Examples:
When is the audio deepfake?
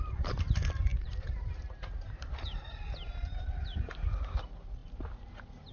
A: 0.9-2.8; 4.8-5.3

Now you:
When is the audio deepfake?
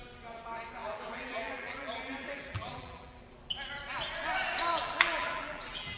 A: 0.8-3.2; 4.7-6.0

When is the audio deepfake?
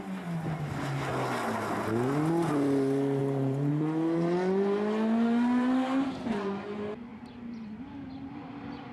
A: 3.2-3.7; 7.1-7.9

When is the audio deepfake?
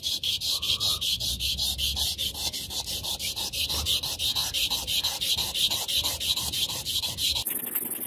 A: none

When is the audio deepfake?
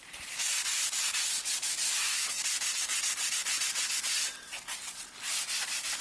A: none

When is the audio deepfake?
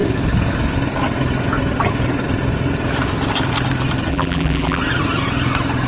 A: 4.1-4.8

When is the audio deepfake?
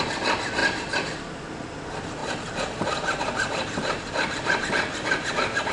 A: none